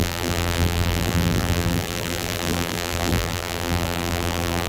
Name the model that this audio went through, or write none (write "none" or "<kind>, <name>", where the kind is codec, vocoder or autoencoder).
vocoder, BigVGAN v2